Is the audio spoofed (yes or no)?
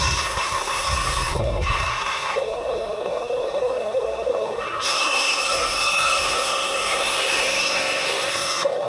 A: yes